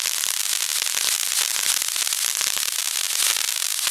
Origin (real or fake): real